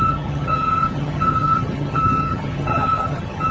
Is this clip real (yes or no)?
no